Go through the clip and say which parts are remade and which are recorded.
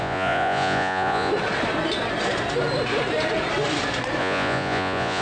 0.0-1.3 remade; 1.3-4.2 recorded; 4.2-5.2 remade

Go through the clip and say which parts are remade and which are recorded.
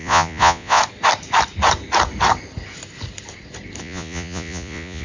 0.0-0.8 remade; 0.8-3.8 recorded; 3.8-5.0 remade